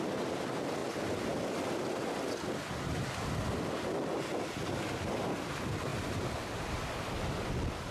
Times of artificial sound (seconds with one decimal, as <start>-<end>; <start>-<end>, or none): none